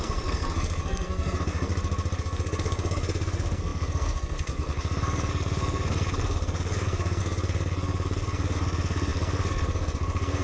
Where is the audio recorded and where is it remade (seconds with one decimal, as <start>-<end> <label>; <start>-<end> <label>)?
0.0-1.7 remade; 1.7-2.2 recorded; 2.2-10.4 remade